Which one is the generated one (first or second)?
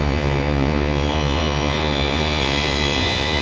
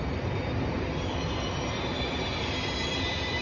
first